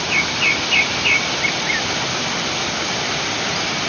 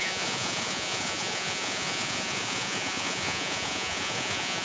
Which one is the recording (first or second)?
first